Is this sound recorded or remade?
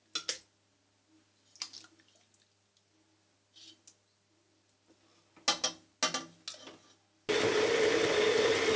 recorded